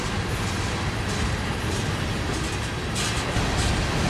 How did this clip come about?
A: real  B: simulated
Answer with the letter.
A